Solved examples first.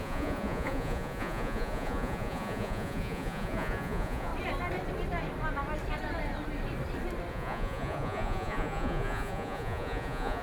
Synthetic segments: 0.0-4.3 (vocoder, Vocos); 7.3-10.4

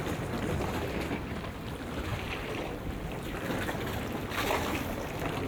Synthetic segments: 2.1-3.4 (vocoder, BigVGAN v2)

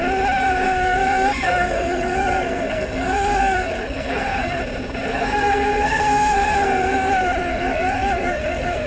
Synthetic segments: 0.4-4.6 (codec, SNAC); 5.1-7.1; 7.5-8.9

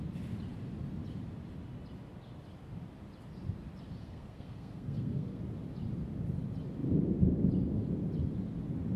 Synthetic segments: 4.0-5.4 (codec, SNAC)

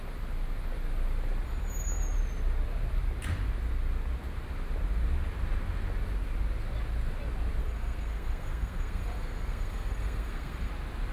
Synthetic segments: 7.6-10.7 (codec, SNAC)